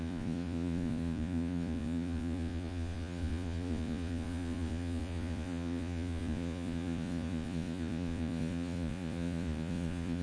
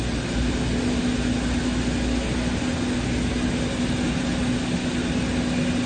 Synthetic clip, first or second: first